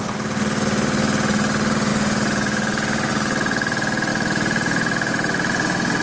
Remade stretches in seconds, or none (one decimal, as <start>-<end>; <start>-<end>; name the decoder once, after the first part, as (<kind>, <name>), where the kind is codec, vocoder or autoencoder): 1.9-3.1 (vocoder, BigVGAN v2); 4.1-5.1